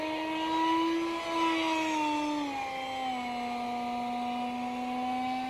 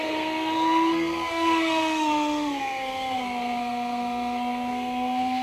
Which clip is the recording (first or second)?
first